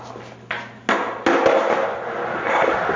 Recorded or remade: recorded